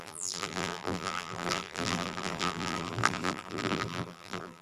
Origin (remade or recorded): remade